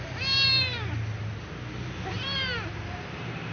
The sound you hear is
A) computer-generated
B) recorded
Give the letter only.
B